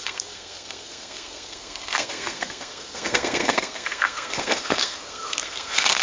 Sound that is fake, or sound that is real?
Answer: fake